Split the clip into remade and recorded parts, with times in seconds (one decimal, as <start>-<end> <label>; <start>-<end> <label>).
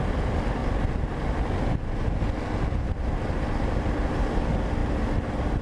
0.0-5.6 recorded